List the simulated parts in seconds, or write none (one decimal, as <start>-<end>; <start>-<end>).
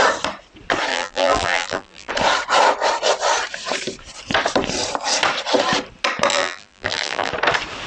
0.9-2.1; 6.3-7.3